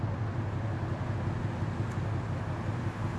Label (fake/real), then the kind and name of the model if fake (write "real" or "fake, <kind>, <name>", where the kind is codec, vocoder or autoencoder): real